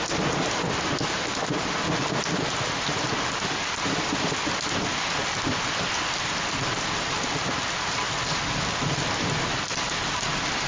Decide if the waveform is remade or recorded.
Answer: recorded